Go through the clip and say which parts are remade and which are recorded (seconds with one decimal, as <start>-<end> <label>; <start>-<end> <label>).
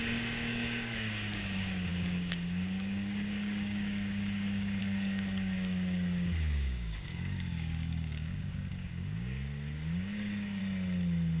0.0-10.6 remade; 10.6-11.4 recorded